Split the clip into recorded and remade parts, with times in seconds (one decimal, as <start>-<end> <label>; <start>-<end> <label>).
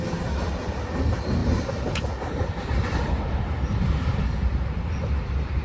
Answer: 0.0-1.4 recorded; 1.4-4.2 remade; 4.2-5.6 recorded